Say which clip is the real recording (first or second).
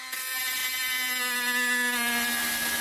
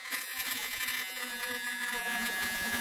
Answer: first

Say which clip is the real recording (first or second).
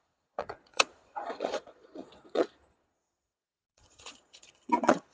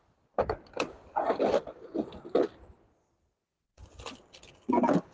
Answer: second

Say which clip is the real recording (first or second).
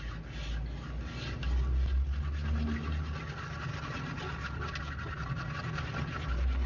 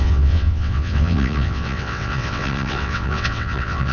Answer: first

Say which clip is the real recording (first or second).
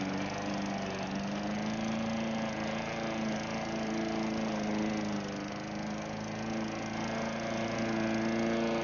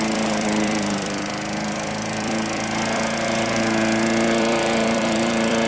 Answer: first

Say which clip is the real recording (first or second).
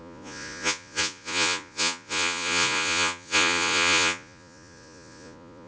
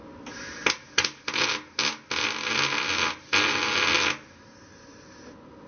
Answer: second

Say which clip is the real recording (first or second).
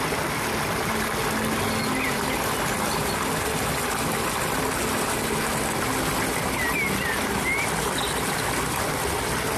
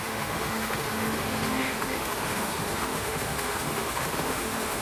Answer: first